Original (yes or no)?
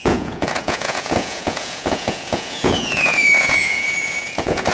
no